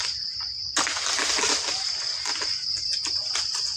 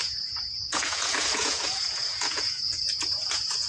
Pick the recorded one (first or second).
first